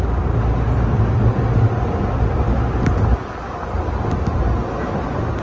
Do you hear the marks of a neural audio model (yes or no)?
no